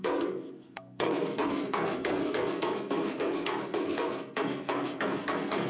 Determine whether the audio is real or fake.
fake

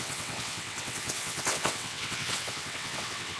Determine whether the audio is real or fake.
fake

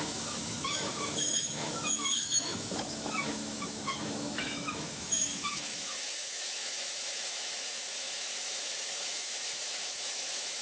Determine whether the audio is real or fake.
fake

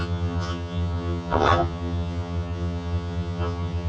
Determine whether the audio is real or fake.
fake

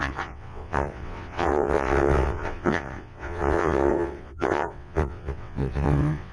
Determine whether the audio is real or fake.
fake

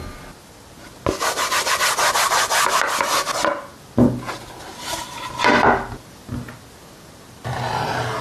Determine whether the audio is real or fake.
real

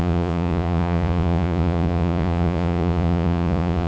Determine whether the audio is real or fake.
fake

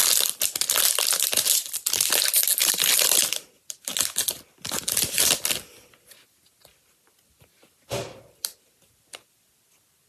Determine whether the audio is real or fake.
real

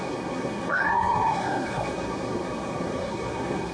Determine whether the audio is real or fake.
fake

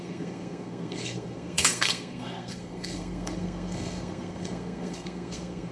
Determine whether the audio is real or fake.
fake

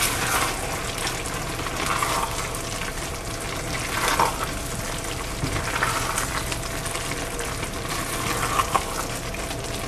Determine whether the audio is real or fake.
real